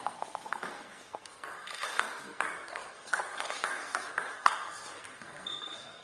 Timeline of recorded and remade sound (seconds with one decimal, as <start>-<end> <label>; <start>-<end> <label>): 0.0-6.0 remade